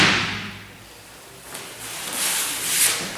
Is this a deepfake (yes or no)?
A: no